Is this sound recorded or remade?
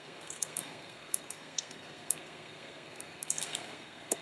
remade